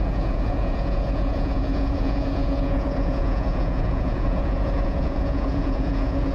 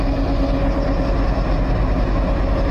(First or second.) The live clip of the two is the second